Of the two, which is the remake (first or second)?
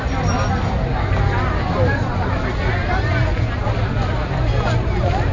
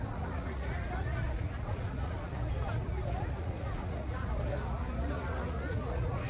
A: second